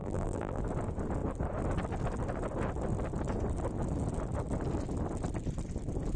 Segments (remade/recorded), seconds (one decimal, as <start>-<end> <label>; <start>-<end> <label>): 0.0-0.6 remade; 0.6-6.2 recorded